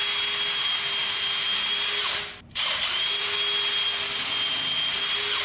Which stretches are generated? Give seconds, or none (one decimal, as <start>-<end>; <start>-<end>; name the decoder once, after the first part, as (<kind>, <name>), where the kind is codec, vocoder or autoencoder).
none